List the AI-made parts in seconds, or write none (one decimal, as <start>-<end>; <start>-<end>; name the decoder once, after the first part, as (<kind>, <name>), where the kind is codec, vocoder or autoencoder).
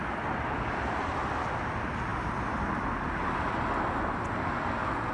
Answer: 2.1-2.6 (vocoder, BigVGAN v2)